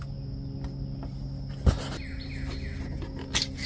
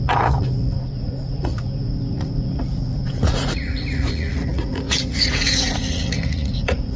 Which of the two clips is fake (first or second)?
second